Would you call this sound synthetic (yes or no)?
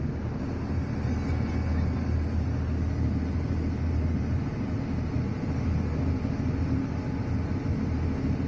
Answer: no